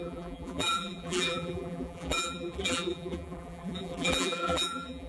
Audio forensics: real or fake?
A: fake